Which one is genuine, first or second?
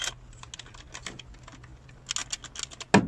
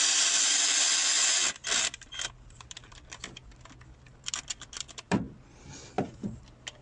first